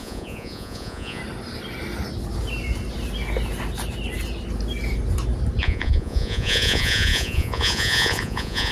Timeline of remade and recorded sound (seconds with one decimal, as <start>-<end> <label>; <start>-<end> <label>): 0.0-1.2 remade; 1.2-5.6 recorded; 5.6-8.7 remade